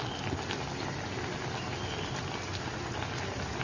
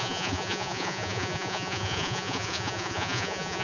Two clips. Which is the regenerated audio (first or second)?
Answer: second